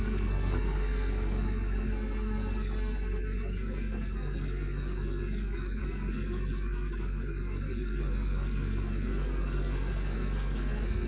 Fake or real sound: fake